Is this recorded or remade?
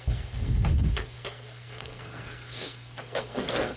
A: remade